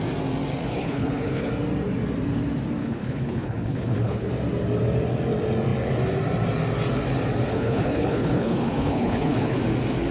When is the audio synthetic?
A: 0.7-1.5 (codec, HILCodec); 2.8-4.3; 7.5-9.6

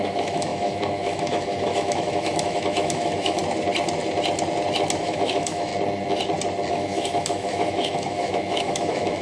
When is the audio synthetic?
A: 0.0-3.4 (autoencoder, DAC-VAE); 5.0-5.7; 6.7-9.2

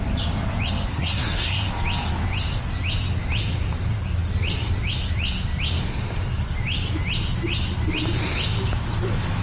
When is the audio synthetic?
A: 0.9-1.7 (codec, SNAC)

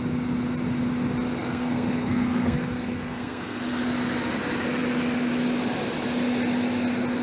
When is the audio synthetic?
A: 1.4-3.6 (codec, SNAC)

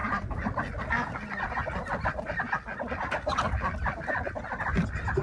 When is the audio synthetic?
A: none